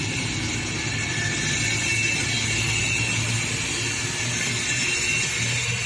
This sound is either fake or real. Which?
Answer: real